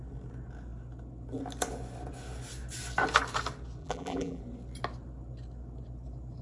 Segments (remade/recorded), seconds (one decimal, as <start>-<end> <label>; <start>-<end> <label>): 0.0-3.8 recorded; 3.8-4.4 remade; 4.4-6.4 recorded